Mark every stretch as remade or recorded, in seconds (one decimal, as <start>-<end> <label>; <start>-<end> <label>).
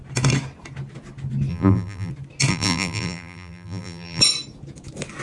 0.0-1.5 recorded; 1.5-2.1 remade; 2.1-2.5 recorded; 2.5-4.2 remade; 4.2-5.2 recorded